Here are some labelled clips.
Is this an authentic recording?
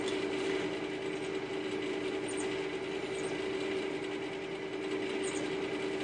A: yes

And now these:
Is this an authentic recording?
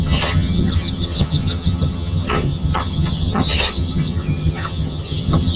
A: no